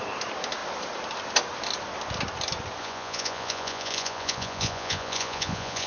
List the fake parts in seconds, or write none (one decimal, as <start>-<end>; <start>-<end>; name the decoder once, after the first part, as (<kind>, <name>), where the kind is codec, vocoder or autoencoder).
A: 2.8-5.9 (vocoder, Vocos)